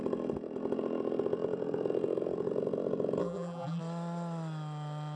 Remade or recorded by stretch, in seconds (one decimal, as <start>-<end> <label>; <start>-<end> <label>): 0.0-3.2 recorded; 3.2-3.8 remade; 3.8-5.2 recorded